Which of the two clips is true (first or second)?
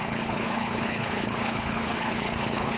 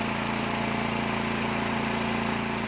second